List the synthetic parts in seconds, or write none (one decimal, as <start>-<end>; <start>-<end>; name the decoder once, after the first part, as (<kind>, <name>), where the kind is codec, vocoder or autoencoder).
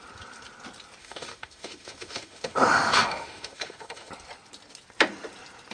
1.0-4.1 (autoencoder, DAC-VAE)